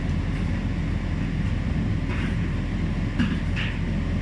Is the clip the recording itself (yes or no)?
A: yes